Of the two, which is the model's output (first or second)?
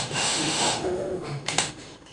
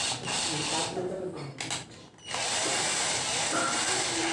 first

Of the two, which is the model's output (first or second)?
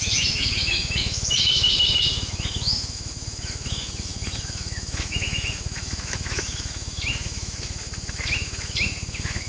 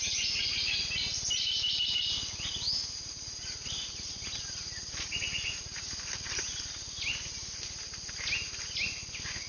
first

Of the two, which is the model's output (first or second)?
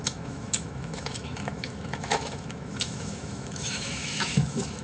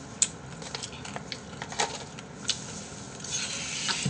first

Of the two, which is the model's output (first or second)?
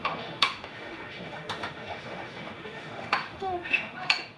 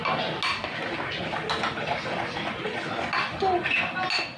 first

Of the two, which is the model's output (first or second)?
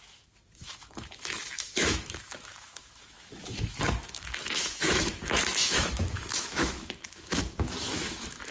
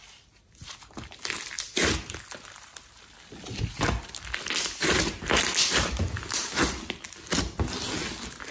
first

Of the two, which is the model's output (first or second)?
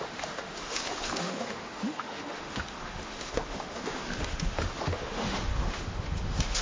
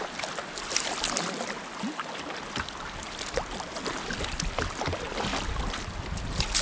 first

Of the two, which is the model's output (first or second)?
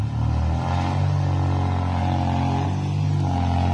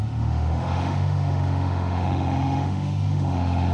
second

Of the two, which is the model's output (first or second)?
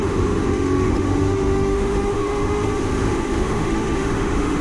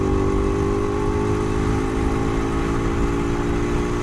first